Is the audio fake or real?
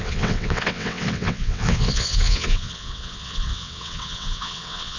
fake